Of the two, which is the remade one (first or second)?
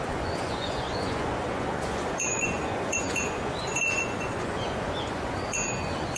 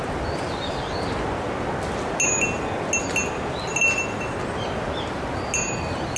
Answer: first